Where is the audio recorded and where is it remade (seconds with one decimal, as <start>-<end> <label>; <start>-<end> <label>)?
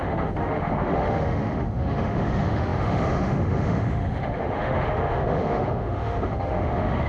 0.0-7.1 remade